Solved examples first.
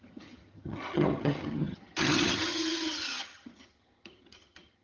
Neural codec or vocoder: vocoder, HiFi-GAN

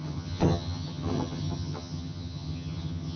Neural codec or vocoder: vocoder, HiFi-GAN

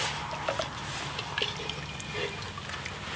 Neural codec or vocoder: none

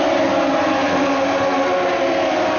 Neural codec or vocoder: none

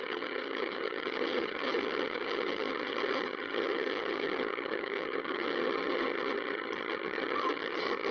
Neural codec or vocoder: vocoder, HiFi-GAN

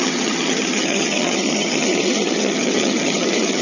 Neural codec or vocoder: vocoder, HiFi-GAN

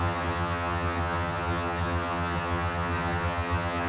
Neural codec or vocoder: vocoder, HiFi-GAN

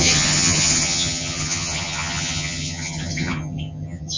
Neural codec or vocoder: vocoder, HiFi-GAN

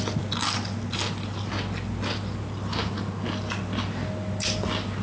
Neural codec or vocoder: none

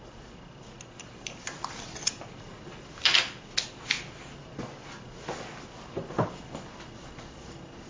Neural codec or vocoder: none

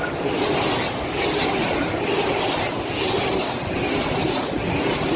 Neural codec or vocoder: none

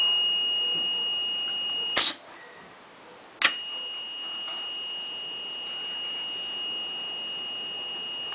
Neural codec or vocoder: none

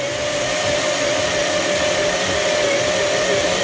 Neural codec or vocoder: none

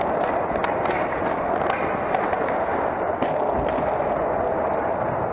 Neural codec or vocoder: none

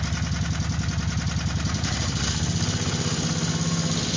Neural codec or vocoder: none